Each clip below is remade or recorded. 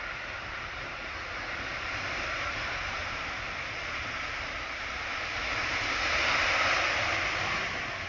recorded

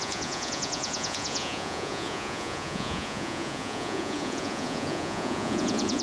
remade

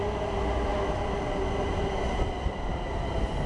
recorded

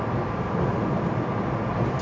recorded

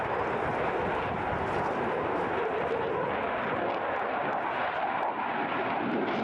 recorded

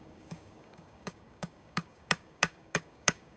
remade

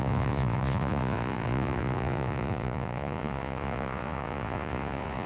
remade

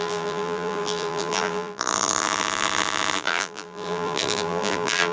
remade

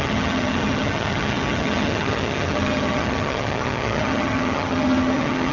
remade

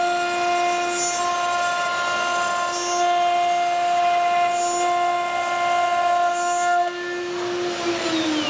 recorded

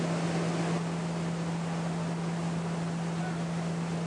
recorded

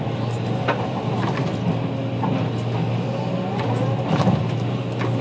recorded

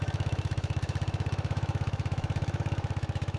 remade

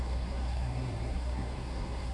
remade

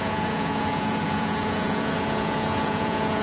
remade